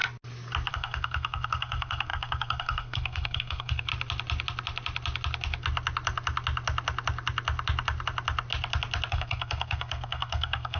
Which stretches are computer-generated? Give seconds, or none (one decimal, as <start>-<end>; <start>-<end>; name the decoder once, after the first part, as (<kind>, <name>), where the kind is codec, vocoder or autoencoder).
0.7-3.9 (codec, SNAC); 9.1-10.8